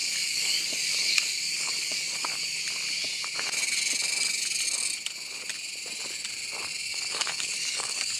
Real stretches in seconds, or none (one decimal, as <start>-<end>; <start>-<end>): 2.6-6.9

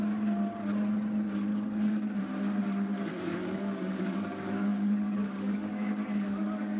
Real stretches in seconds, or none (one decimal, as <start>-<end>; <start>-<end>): 0.0-1.5; 2.2-3.1

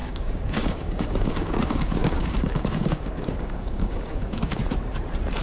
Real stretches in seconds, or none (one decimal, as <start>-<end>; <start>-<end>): 4.6-5.4

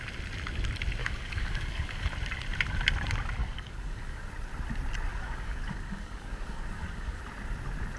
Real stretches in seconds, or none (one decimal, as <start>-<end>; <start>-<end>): 0.0-1.0; 2.1-3.4; 4.3-5.1; 7.2-8.0